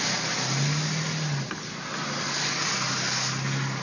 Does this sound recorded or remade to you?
recorded